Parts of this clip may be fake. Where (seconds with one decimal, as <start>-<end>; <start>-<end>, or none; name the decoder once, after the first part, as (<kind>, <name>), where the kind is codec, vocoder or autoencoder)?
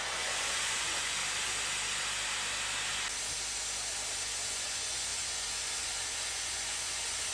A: 0.0-1.2 (vocoder, Vocos); 4.5-7.3